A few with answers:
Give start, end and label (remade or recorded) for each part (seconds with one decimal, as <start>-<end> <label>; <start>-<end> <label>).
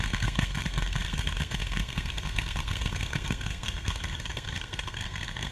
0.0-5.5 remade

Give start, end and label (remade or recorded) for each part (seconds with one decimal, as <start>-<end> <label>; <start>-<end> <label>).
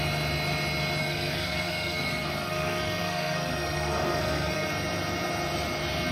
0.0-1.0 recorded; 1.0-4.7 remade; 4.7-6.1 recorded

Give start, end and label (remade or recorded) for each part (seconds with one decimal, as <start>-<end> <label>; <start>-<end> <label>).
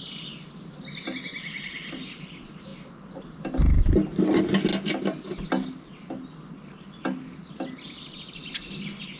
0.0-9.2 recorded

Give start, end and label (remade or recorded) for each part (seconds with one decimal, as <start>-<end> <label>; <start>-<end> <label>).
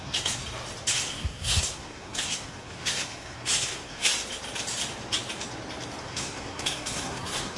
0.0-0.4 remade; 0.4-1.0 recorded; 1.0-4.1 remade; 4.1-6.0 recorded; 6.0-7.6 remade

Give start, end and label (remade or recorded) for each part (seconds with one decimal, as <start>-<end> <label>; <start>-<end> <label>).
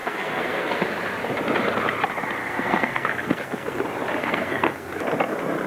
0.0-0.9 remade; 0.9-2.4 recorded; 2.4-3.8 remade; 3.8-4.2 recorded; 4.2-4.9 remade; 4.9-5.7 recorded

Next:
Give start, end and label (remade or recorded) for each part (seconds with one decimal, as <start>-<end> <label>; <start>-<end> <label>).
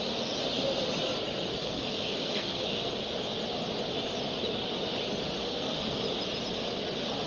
0.0-1.6 recorded; 1.6-2.9 remade; 2.9-5.4 recorded; 5.4-6.0 remade; 6.0-7.3 recorded